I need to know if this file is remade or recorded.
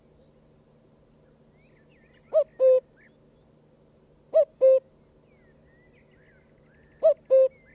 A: recorded